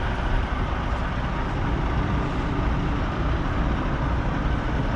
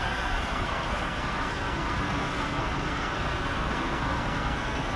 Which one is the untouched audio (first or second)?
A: first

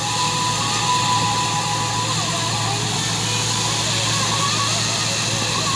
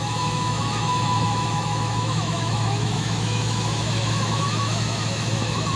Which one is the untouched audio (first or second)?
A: first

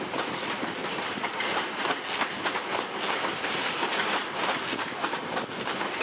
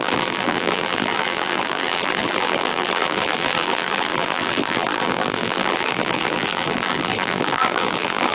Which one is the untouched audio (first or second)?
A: first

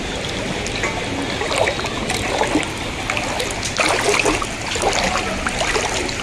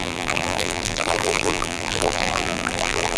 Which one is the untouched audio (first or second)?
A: first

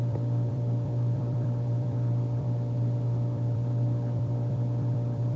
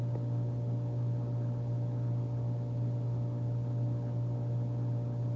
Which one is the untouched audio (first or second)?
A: second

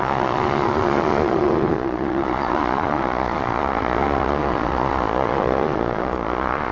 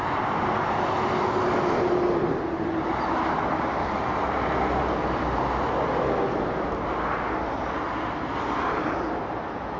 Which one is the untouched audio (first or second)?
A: second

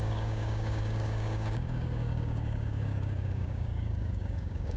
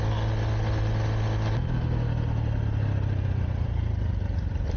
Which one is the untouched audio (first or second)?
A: second